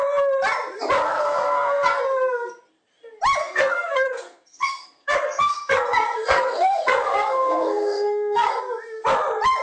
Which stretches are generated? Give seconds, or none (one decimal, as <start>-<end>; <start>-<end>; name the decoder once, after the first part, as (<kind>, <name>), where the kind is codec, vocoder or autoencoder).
1.1-2.0 (codec, SNAC); 3.4-8.6